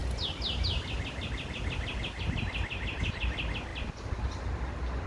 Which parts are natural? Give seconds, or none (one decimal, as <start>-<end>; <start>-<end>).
0.0-5.1